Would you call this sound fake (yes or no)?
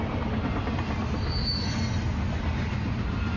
no